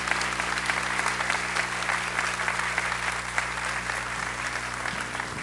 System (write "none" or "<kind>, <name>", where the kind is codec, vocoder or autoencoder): none